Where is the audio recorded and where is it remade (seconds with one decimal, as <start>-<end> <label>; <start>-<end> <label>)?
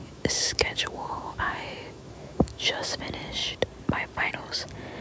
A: 0.0-3.0 remade; 3.0-5.0 recorded